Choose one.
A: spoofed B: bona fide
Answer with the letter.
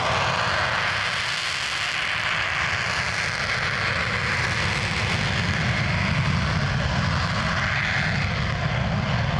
B